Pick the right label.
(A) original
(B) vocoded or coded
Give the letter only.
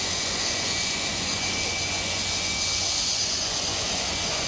B